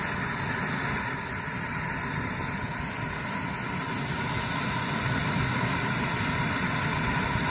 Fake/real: real